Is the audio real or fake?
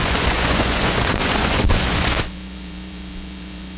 fake